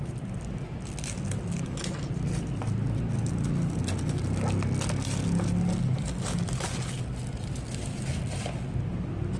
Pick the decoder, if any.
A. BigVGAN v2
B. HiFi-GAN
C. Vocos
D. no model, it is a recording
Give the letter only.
D